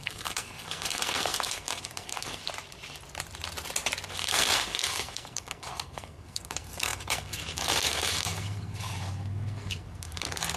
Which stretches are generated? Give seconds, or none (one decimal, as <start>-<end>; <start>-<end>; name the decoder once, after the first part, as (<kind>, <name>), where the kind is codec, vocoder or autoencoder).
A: 0.0-2.4 (codec, SNAC); 4.1-10.6